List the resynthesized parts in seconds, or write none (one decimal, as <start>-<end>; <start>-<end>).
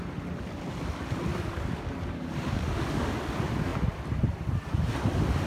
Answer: 1.3-3.1